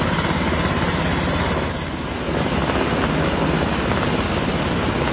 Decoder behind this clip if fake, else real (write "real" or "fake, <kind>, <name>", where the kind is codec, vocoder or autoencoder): real